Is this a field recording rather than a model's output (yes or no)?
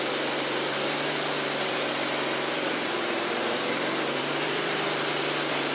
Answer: no